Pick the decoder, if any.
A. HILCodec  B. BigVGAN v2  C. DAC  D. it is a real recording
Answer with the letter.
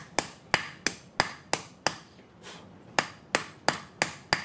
D